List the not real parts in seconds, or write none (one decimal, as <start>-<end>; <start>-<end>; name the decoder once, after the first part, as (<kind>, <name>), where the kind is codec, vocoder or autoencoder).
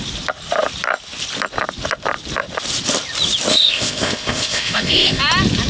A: 3.5-5.2 (codec, ZipCodec)